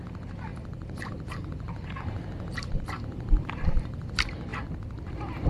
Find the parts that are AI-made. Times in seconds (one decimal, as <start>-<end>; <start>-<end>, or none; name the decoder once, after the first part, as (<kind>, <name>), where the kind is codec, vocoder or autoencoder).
0.0-4.5 (vocoder, BigVGAN v2); 5.1-5.5